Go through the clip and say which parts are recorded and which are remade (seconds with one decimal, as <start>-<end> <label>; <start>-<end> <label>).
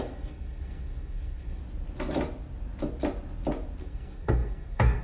0.0-1.6 remade; 1.6-3.8 recorded; 3.8-5.0 remade